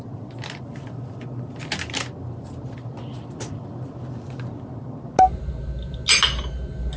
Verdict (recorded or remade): recorded